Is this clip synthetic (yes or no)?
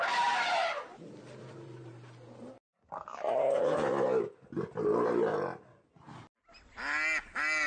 no